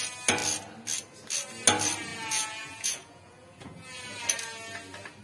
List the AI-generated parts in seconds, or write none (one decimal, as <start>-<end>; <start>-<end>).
2.1-4.2